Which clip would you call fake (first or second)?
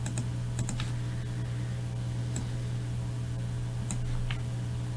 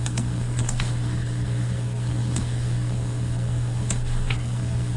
second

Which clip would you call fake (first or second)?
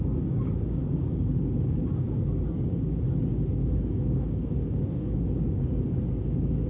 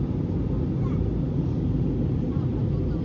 first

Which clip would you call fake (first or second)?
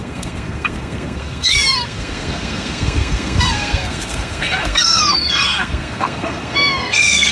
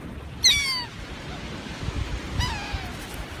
first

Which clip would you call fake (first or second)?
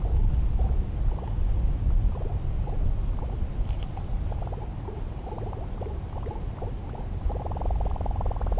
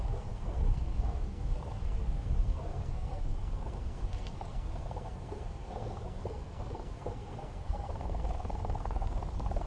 second